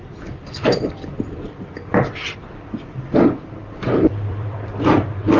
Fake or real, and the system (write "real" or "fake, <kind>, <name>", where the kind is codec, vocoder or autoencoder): fake, vocoder, BigVGAN v2